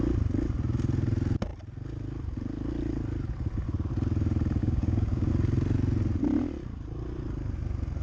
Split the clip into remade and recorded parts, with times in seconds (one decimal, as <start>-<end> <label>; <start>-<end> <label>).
0.0-4.6 recorded; 4.6-5.3 remade; 5.3-8.0 recorded